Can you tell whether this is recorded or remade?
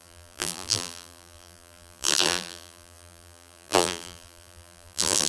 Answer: remade